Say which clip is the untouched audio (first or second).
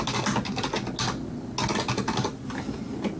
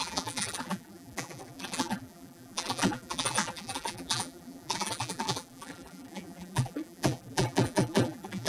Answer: first